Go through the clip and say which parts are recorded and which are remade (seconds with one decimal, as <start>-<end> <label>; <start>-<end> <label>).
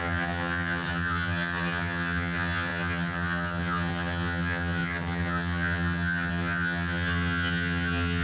0.0-8.2 remade